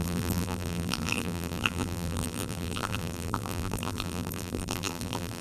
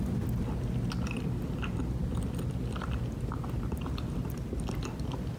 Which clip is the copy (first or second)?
first